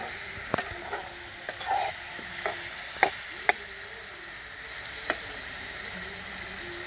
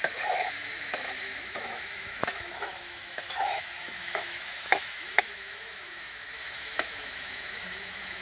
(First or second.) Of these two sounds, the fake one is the second